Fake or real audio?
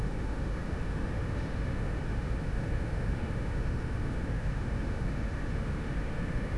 fake